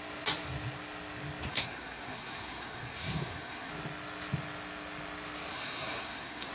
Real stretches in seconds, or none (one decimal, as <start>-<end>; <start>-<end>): 0.0-1.5; 3.7-5.5